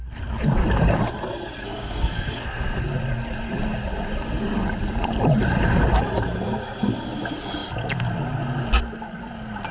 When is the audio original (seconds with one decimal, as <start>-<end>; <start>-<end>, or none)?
0.0-1.6; 2.8-9.7